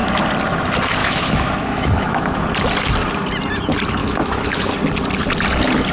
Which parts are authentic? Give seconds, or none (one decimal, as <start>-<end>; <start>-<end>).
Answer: 0.0-1.0; 2.4-4.0; 4.7-5.9

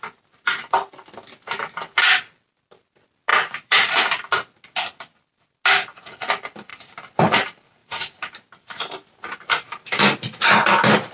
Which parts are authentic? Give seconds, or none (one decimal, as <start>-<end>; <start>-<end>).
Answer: 0.0-3.3; 3.9-7.8

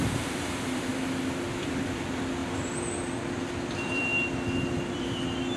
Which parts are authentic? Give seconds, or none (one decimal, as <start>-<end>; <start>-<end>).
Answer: 0.9-1.6; 4.1-5.6